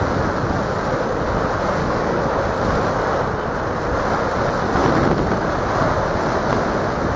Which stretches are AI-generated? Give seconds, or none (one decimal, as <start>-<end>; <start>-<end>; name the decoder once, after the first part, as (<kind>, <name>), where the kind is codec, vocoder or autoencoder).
1.8-2.3 (codec, DAC)